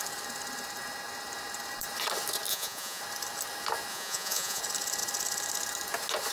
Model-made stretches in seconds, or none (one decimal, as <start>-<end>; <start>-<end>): 2.5-3.0; 3.9-4.6